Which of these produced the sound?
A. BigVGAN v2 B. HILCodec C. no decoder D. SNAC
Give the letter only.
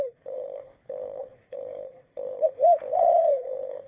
B